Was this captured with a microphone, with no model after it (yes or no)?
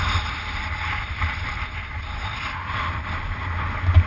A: yes